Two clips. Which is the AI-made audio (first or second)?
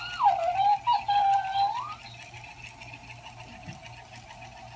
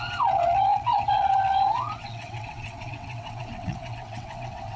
second